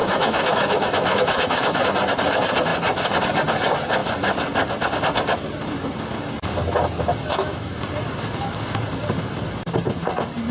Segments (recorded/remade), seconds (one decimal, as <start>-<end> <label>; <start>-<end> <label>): 0.0-1.8 remade; 1.8-7.3 recorded; 7.3-7.8 remade; 7.8-10.5 recorded